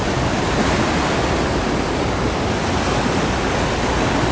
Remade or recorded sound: recorded